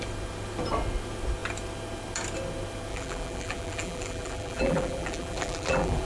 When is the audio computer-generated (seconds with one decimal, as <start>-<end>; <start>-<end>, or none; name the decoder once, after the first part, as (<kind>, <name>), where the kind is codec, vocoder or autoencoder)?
2.9-6.1 (vocoder, BigVGAN v2)